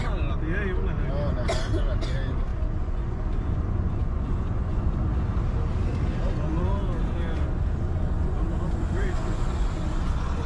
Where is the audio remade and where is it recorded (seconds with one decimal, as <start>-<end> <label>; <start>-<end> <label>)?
0.0-2.5 recorded; 2.5-5.0 remade; 5.0-6.1 recorded; 6.1-10.5 remade